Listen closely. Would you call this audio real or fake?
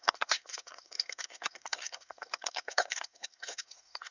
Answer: fake